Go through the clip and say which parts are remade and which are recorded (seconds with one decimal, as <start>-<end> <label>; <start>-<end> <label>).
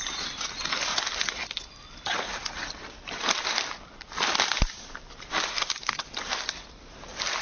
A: 0.0-7.4 recorded